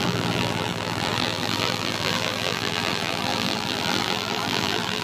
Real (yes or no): no